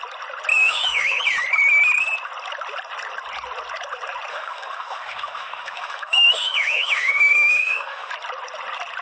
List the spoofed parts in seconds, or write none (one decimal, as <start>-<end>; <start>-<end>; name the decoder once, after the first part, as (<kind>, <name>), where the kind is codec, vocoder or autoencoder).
0.5-1.2 (autoencoder, DAC-VAE); 4.3-8.1

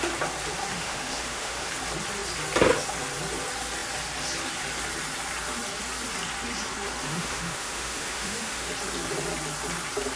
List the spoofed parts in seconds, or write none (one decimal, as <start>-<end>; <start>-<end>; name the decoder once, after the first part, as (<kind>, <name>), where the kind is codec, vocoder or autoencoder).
0.7-1.7 (autoencoder, DAC-VAE); 7.1-8.7